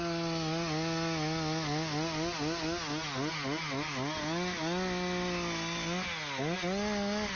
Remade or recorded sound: recorded